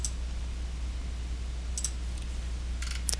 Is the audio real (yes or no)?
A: yes